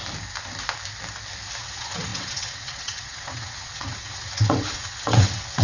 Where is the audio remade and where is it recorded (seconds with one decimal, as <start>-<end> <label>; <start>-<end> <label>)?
0.0-1.6 recorded; 1.6-5.6 remade